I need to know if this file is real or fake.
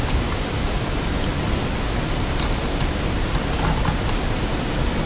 real